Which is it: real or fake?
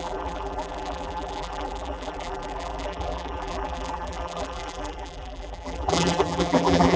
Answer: fake